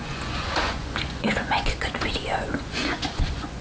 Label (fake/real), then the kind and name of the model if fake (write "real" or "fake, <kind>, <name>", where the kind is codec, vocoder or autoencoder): fake, vocoder, Vocos